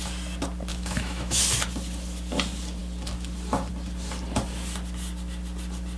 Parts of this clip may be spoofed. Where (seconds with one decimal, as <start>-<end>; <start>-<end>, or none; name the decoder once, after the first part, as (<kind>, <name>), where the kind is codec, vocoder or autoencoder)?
0.7-1.4 (autoencoder, DAC-VAE)